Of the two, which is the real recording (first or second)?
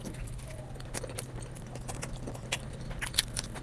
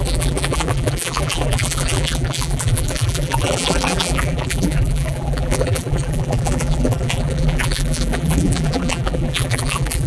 first